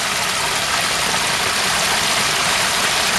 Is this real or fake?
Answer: real